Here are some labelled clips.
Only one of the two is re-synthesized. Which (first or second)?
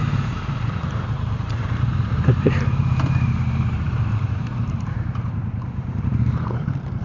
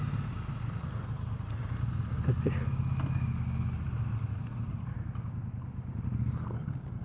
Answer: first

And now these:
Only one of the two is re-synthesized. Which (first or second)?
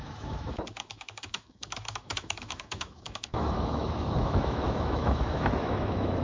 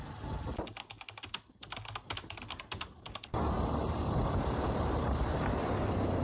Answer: first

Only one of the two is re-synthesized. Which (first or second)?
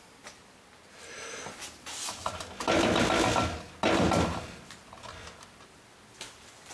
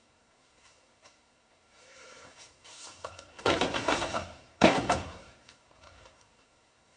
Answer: second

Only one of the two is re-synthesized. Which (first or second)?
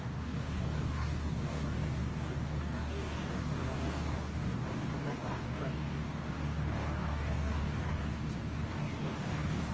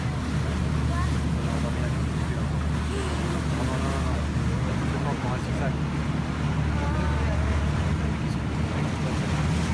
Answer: first